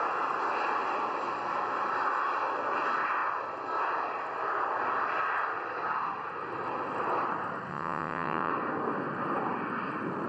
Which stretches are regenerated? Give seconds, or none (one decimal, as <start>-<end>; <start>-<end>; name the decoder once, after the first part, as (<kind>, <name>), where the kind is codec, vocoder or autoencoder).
7.7-8.5 (vocoder, WaveNeXt)